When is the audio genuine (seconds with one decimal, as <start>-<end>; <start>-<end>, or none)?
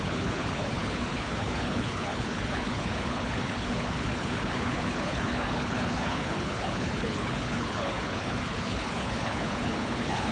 none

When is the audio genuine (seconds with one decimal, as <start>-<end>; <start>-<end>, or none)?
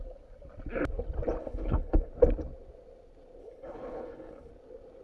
0.0-1.4; 2.1-3.4; 4.5-5.0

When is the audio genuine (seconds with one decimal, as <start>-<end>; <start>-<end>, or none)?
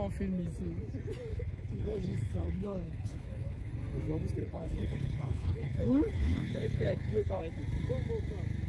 0.0-1.3; 3.7-4.4; 7.4-8.7